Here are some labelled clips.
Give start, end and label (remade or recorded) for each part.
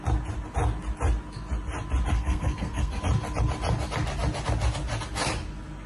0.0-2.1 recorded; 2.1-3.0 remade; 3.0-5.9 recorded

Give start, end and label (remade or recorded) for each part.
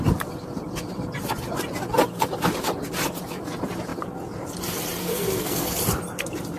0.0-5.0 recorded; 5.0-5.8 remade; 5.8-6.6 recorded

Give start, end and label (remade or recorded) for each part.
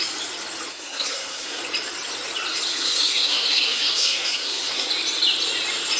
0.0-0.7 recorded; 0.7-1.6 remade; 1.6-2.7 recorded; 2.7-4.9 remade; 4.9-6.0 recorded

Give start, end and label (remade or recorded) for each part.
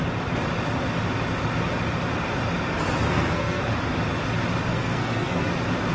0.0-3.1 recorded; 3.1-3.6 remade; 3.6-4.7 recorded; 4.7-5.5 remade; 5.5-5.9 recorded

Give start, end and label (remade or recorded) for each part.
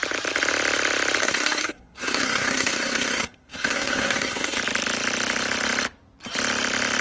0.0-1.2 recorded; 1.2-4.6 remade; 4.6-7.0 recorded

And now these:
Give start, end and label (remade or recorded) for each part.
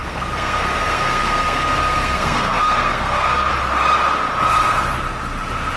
0.0-3.5 remade; 3.5-5.8 recorded